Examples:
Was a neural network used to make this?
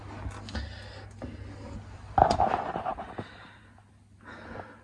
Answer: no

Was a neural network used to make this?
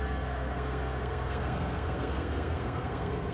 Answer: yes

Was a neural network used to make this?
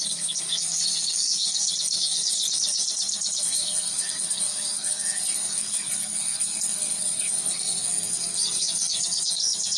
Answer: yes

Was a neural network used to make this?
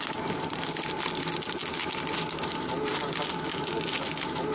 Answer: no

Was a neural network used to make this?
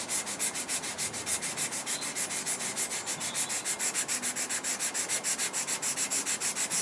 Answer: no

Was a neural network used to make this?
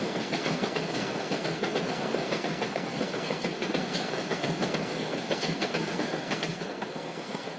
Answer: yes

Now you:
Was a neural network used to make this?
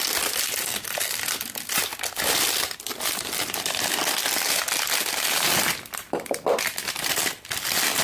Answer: no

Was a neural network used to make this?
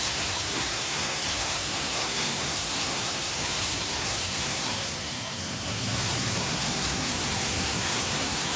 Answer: yes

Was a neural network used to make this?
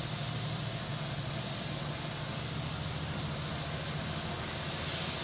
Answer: no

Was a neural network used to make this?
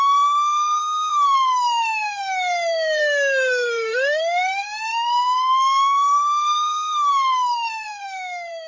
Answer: yes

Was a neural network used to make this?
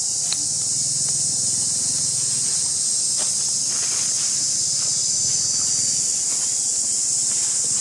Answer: no